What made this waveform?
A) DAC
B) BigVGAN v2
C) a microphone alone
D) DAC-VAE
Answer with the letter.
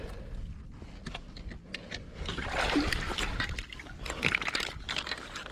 C